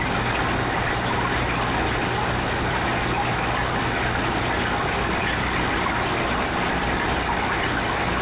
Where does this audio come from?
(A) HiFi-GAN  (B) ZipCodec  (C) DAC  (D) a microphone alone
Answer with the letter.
D